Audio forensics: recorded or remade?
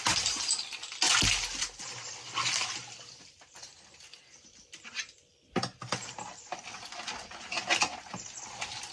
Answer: recorded